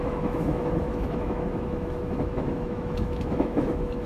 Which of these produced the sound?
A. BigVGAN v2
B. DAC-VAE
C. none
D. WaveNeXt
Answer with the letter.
B